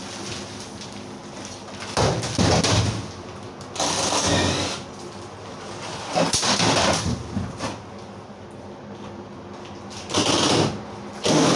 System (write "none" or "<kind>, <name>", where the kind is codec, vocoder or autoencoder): none